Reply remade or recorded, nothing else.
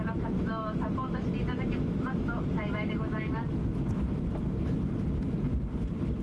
recorded